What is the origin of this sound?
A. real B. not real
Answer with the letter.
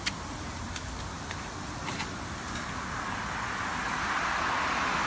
A